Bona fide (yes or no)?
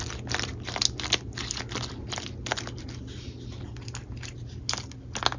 yes